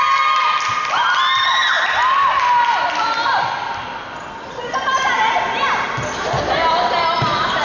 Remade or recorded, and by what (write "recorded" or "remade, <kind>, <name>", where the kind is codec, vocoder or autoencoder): recorded